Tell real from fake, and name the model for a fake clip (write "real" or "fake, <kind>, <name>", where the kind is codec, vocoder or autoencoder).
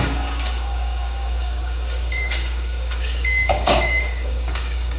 fake, codec, DAC